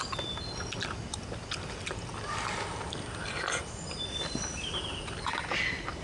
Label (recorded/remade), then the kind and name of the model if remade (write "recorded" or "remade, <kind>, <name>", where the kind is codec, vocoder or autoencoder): recorded